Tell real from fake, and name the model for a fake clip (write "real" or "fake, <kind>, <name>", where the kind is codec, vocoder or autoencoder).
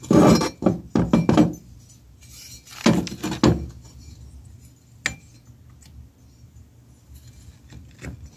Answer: real